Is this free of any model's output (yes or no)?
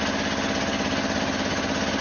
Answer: yes